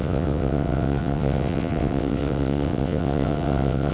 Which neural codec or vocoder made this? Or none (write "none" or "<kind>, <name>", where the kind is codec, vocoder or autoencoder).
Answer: vocoder, WaveNeXt